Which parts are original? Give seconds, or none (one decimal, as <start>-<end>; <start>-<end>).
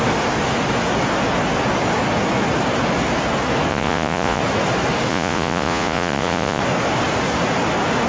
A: 0.0-3.7; 4.4-5.1; 6.6-8.1